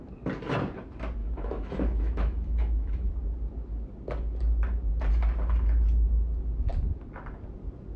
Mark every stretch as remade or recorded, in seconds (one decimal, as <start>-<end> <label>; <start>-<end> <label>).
0.0-1.2 recorded; 1.2-3.1 remade; 3.1-8.0 recorded